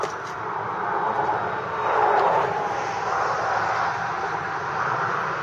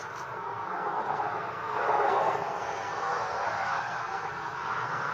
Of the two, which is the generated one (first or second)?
second